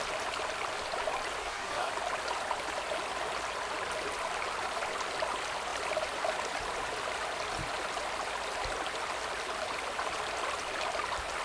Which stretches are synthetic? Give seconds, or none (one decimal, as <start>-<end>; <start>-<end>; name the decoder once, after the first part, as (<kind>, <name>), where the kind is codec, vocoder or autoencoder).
1.4-1.9 (codec, DAC)